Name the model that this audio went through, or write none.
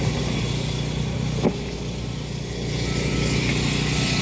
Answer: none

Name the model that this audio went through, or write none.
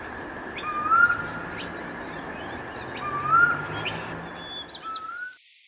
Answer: none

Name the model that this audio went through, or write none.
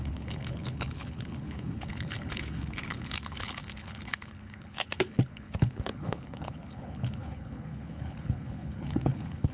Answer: codec, HILCodec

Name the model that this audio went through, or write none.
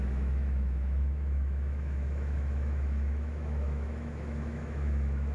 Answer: autoencoder, DAC-VAE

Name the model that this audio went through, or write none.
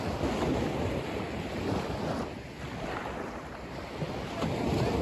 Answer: none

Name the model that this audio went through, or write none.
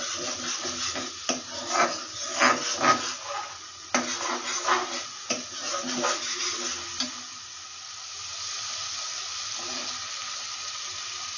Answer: none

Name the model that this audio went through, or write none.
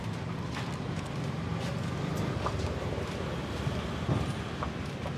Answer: none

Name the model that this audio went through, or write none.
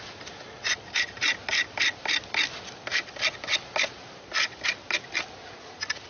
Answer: none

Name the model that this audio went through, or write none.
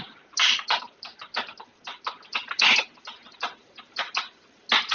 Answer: none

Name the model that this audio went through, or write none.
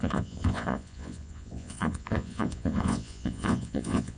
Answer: vocoder, Vocos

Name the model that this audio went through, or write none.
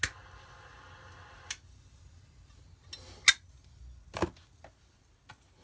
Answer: none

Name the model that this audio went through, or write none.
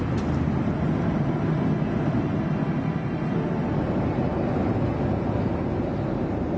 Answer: none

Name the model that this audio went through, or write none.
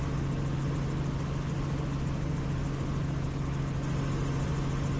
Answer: none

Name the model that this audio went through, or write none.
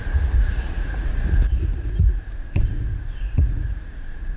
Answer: vocoder, Vocos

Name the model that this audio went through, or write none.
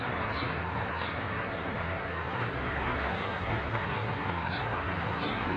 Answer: codec, SNAC